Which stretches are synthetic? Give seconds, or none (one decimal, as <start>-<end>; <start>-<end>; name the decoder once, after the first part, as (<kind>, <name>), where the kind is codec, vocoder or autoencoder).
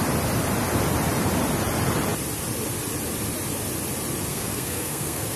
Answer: 4.3-5.4 (codec, SNAC)